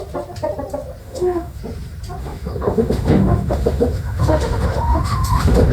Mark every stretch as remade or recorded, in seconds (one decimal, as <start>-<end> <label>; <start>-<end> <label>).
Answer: 0.0-1.0 recorded; 1.0-1.6 remade; 1.6-2.2 recorded; 2.2-5.7 remade

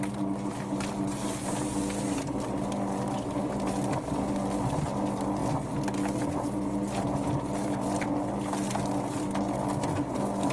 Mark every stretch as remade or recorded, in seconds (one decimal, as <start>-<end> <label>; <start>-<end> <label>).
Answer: 0.0-10.5 recorded

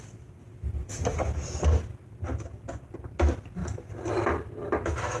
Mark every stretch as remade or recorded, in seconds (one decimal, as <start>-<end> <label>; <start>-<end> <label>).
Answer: 0.0-5.2 recorded

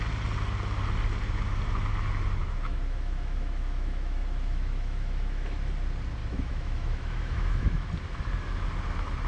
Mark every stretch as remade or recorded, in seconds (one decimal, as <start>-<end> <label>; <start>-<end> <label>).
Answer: 0.0-2.4 recorded; 2.4-5.7 remade; 5.7-6.2 recorded; 6.2-7.9 remade; 7.9-9.3 recorded

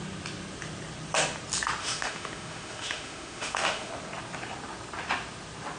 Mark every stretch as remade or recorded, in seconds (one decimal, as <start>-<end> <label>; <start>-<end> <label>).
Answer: 0.0-1.8 recorded; 1.8-3.9 remade; 3.9-5.8 recorded

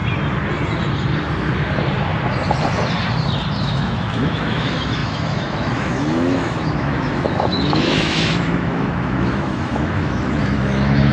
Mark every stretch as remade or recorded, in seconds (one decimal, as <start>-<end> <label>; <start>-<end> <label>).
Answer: 0.0-3.6 recorded; 3.6-11.1 remade

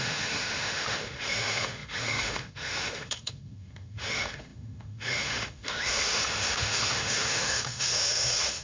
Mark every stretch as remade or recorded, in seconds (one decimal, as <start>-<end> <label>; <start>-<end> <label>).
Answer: 0.0-8.6 remade

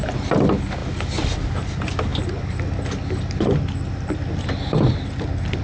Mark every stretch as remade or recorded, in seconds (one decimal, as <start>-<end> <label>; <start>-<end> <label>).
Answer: 0.0-5.6 recorded